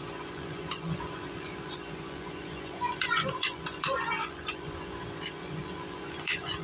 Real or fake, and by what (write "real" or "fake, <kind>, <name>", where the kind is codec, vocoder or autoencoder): fake, vocoder, Vocos